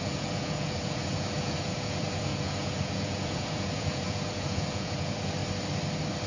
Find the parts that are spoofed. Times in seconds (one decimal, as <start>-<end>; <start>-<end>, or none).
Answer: 0.0-5.4